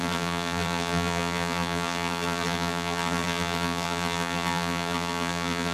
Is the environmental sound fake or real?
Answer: fake